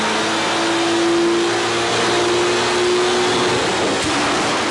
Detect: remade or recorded recorded